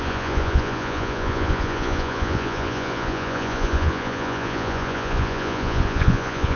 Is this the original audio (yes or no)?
no